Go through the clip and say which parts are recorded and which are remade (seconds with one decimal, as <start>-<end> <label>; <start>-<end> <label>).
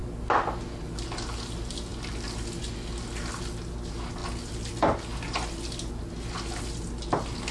0.0-7.5 recorded